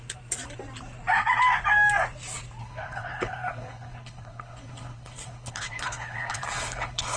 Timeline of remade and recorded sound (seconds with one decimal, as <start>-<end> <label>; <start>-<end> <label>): 0.0-2.6 recorded; 2.6-7.2 remade